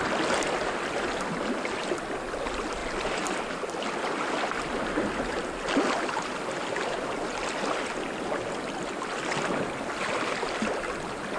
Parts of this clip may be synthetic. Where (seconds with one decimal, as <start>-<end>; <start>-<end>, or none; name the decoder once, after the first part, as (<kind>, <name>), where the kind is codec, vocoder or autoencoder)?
none